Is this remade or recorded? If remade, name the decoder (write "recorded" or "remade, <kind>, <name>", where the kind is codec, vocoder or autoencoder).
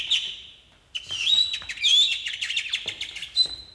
recorded